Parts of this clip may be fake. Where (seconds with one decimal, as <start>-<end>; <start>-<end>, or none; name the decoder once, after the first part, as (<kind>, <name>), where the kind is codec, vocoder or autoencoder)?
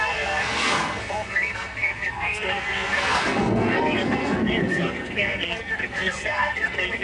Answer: 0.0-7.0 (codec, SNAC)